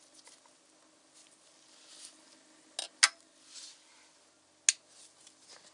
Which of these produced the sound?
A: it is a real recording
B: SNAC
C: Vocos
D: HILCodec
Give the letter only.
A